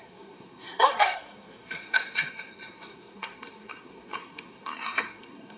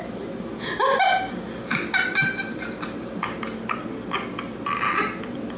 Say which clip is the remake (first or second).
first